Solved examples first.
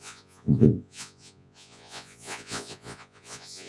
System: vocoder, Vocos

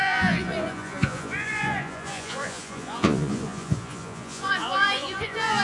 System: vocoder, Vocos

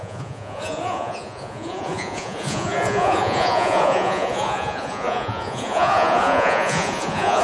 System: vocoder, Vocos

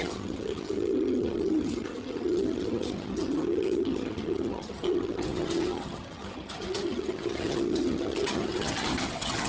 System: vocoder, HiFi-GAN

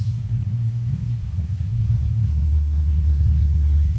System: codec, SNAC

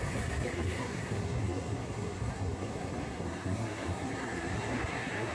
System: codec, SNAC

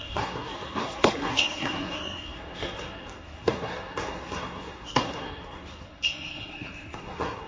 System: codec, SNAC